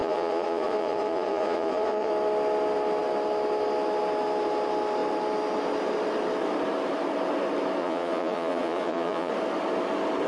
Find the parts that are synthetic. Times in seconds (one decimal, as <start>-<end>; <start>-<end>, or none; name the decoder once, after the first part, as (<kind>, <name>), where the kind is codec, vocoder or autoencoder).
0.0-2.1 (vocoder, Vocos); 7.8-9.3